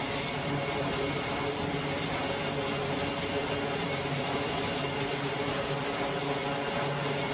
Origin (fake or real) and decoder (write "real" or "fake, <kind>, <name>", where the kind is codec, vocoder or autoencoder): real